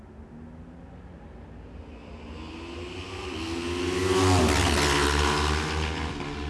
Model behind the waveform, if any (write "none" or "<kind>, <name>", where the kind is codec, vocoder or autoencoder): none